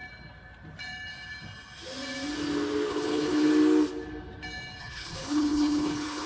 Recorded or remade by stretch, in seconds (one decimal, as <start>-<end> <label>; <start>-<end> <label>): 0.0-2.9 recorded; 2.9-3.5 remade; 3.5-4.8 recorded; 4.8-6.3 remade